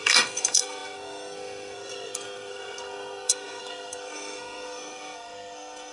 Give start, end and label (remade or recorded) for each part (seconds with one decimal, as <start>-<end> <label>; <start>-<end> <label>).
0.0-5.9 remade